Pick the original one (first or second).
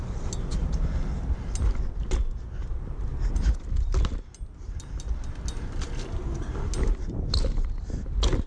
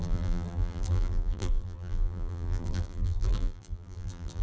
first